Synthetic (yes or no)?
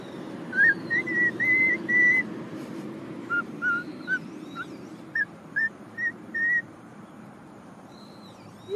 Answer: yes